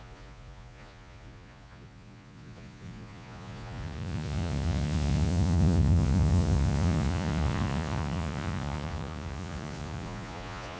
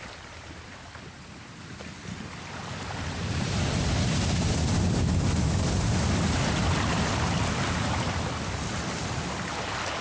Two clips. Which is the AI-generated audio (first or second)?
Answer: first